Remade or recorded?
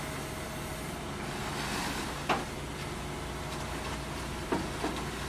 recorded